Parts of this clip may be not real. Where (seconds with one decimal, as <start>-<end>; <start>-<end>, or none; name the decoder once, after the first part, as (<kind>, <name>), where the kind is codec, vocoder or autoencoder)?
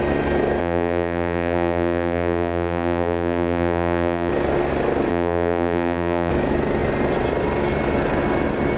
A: 0.6-4.3 (vocoder, BigVGAN v2); 5.1-6.3